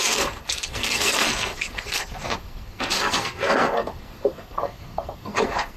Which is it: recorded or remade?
remade